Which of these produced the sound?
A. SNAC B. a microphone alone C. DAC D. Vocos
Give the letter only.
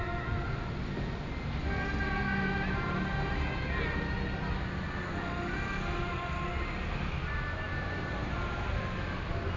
B